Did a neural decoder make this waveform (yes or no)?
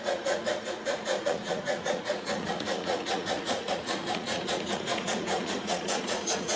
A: yes